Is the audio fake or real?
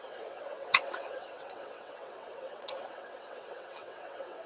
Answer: fake